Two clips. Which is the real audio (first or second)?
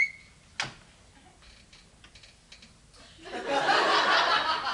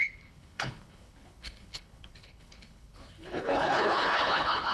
first